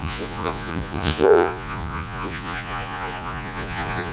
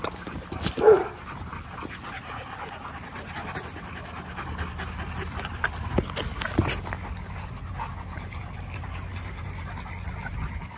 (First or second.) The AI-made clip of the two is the first